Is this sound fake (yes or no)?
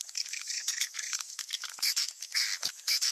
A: yes